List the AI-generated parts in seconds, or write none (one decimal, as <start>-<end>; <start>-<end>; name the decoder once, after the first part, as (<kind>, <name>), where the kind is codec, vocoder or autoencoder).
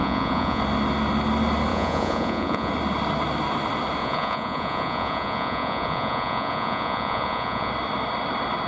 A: 0.0-0.6 (vocoder, Vocos); 1.7-2.7; 4.0-7.7